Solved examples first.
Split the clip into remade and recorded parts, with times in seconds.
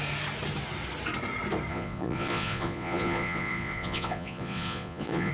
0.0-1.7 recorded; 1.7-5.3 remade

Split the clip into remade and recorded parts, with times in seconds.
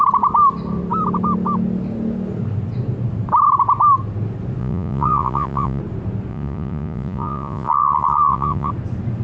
0.0-4.6 recorded; 4.6-5.8 remade; 5.8-6.3 recorded; 6.3-8.7 remade; 8.7-9.2 recorded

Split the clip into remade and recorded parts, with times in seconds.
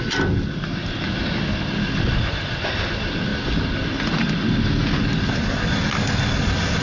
0.0-6.8 recorded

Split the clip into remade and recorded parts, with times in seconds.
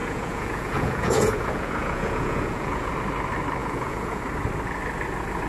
0.0-2.9 remade; 2.9-3.6 recorded; 3.6-4.2 remade; 4.2-5.5 recorded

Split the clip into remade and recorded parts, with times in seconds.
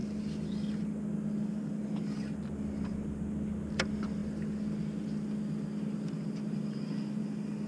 0.0-7.7 recorded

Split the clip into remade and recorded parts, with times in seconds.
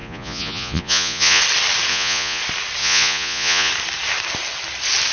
0.0-1.4 remade; 1.4-1.9 recorded; 1.9-2.4 remade; 2.4-2.8 recorded; 2.8-3.7 remade; 3.7-5.1 recorded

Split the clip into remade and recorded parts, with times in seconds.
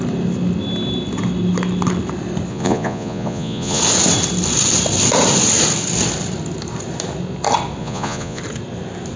0.0-2.5 recorded; 2.5-3.8 remade; 3.8-7.8 recorded; 7.8-8.4 remade; 8.4-9.2 recorded